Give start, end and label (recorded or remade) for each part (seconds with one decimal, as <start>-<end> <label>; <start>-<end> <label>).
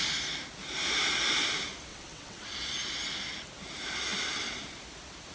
0.0-1.9 recorded; 1.9-2.5 remade; 2.5-5.3 recorded